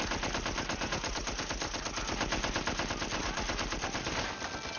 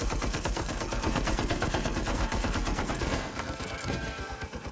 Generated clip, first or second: second